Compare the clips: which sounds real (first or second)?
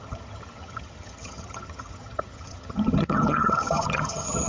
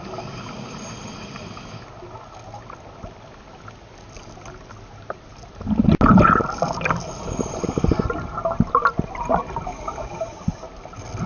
second